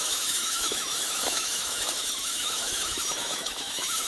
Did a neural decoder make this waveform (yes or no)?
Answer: yes